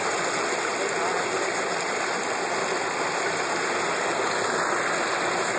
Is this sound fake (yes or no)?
no